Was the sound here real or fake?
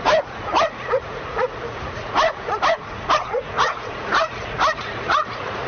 fake